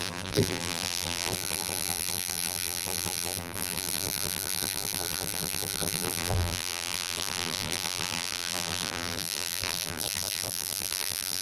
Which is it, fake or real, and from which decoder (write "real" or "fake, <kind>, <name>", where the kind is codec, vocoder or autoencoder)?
fake, vocoder, BigVGAN v2